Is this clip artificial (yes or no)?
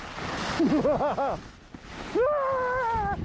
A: no